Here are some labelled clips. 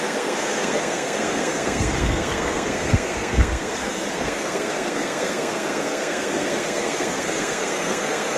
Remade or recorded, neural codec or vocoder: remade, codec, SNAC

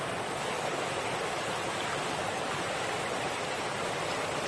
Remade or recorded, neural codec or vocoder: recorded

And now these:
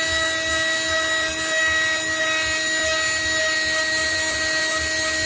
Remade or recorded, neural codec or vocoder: recorded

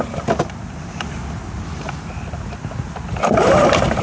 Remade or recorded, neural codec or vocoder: recorded